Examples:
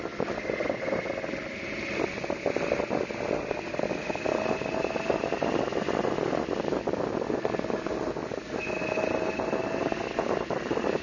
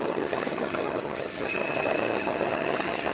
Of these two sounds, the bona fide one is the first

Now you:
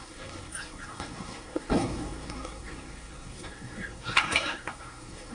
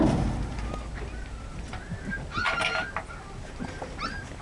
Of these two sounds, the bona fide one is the second